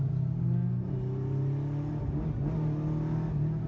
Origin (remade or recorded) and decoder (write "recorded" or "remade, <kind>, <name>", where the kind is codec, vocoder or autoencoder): recorded